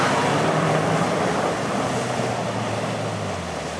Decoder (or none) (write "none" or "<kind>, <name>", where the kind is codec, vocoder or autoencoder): none